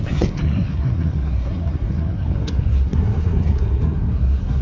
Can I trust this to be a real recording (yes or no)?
no